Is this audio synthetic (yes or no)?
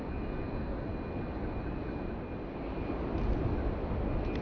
no